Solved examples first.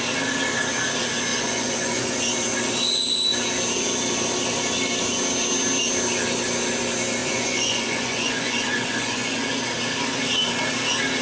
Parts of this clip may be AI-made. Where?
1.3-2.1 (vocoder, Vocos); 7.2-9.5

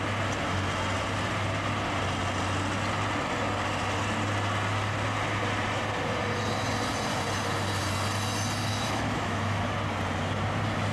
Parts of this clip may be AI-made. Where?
8.7-9.6 (autoencoder, DAC-VAE)

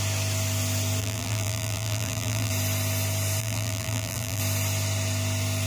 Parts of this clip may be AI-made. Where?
1.0-2.5 (vocoder, BigVGAN v2); 3.4-4.4

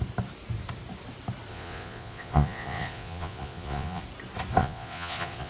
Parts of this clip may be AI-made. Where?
1.5-4.0 (vocoder, Vocos); 4.6-5.5

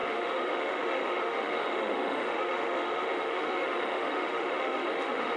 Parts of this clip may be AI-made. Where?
0.0-5.4 (autoencoder, DAC-VAE)

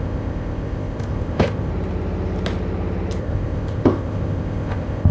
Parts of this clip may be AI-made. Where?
0.0-1.7 (codec, ZipCodec); 3.2-5.1

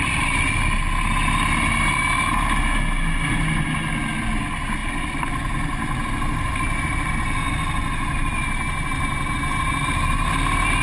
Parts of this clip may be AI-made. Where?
none